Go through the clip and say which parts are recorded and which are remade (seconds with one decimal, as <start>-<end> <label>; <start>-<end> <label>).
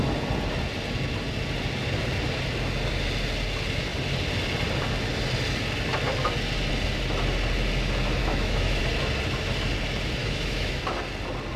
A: 0.0-8.2 recorded; 8.2-8.8 remade; 8.8-10.2 recorded; 10.2-10.8 remade; 10.8-11.6 recorded